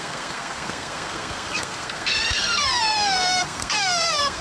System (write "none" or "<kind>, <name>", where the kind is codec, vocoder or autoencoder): codec, SNAC